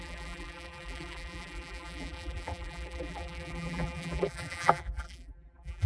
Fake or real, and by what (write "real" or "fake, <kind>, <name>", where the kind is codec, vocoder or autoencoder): fake, vocoder, BigVGAN v2